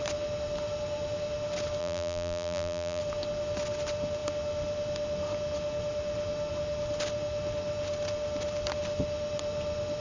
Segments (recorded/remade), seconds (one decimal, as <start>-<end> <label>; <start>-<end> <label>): 0.0-1.8 recorded; 1.8-3.0 remade; 3.0-10.0 recorded